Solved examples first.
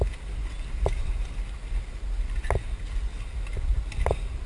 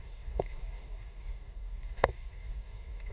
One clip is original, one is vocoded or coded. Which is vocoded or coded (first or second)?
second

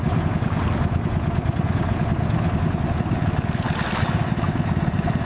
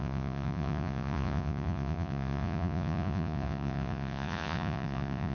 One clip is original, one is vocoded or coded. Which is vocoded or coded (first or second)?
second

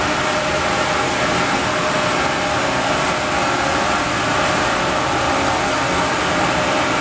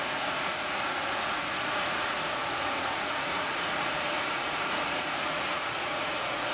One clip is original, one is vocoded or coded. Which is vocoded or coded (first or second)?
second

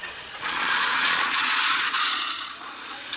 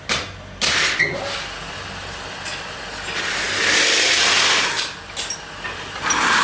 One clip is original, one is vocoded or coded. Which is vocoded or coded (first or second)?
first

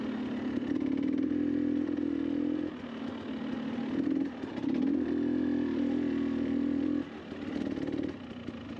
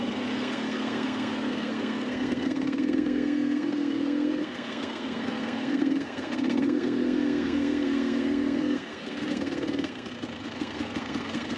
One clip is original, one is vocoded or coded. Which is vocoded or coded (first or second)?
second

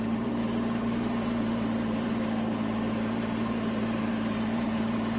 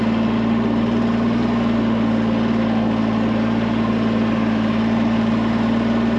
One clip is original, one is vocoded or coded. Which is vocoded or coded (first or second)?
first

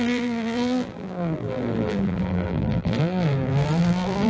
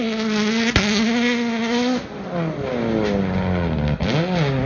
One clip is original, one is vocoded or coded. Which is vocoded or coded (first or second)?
first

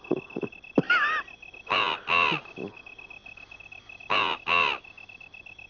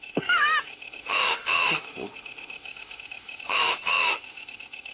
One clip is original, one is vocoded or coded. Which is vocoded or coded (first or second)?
second